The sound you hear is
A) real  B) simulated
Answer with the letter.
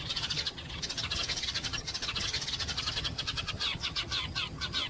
B